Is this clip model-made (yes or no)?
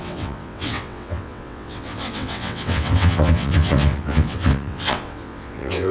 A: yes